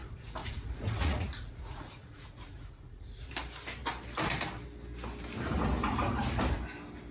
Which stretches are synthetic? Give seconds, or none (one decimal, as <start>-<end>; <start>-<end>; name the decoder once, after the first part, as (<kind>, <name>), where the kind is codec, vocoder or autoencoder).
0.0-3.3 (vocoder, Vocos)